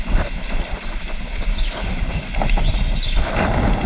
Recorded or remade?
recorded